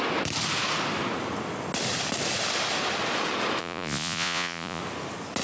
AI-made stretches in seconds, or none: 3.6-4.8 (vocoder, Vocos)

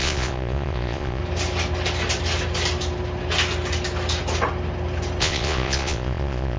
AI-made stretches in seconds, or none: 0.0-1.2 (vocoder, Vocos); 5.2-6.6

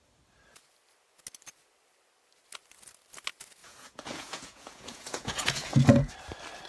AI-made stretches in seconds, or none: 3.6-6.1 (vocoder, Vocos)

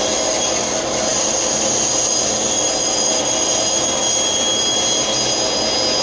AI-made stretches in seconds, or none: none

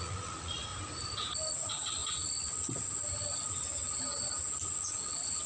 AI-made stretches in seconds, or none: 0.0-0.7 (vocoder, Vocos); 1.5-2.0; 4.8-5.5

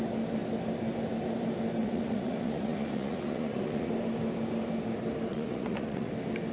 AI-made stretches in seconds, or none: 1.8-3.9 (vocoder, Vocos); 5.3-6.1

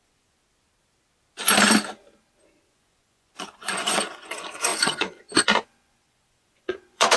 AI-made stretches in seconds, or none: 0.0-0.4 (vocoder, Vocos); 2.7-7.2

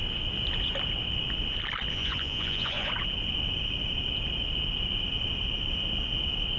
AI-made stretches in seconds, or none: 1.9-2.9 (vocoder, Vocos)